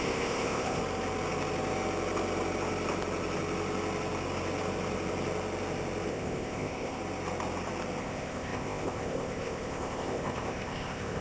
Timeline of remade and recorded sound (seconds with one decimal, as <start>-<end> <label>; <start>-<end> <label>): 0.0-0.8 remade; 0.8-6.1 recorded; 6.1-7.0 remade; 7.0-8.0 recorded; 8.0-11.2 remade